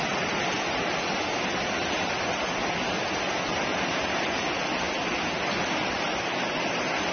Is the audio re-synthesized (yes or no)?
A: no